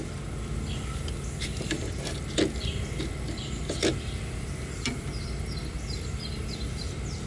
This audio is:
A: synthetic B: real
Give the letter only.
B